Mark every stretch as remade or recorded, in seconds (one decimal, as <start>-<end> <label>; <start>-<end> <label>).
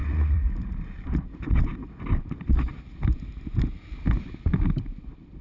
0.0-0.7 remade; 0.7-5.4 recorded